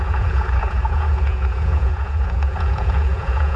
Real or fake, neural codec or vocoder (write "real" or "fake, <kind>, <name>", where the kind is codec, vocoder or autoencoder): fake, vocoder, Vocos